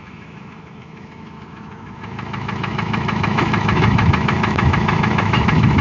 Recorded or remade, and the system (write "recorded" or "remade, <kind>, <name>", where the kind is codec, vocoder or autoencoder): remade, autoencoder, DAC-VAE